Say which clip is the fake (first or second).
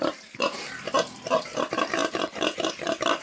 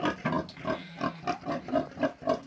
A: first